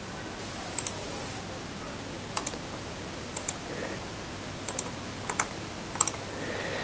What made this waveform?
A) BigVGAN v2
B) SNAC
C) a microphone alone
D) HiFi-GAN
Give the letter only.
C